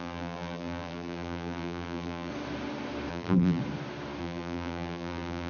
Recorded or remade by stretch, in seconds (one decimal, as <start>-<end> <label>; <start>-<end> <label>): 0.0-2.3 remade; 2.3-3.1 recorded; 3.1-3.6 remade; 3.6-4.2 recorded; 4.2-5.5 remade